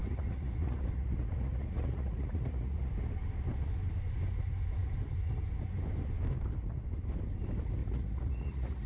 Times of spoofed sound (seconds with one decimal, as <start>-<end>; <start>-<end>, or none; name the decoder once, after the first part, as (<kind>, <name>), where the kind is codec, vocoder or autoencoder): 0.0-2.9 (vocoder, Vocos); 7.8-8.9